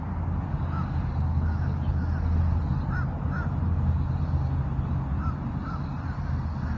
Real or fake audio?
real